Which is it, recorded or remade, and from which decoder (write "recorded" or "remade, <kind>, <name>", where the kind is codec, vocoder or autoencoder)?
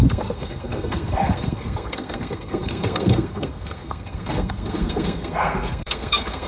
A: remade, codec, SNAC